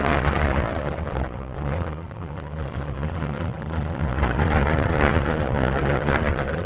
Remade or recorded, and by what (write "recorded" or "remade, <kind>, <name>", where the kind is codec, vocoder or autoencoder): remade, vocoder, Vocos